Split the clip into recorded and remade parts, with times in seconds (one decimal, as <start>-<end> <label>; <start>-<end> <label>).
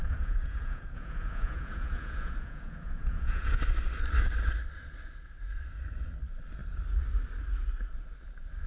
0.0-3.6 remade; 3.6-8.7 recorded